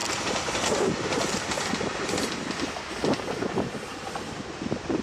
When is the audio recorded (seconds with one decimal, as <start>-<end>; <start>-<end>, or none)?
0.0-5.0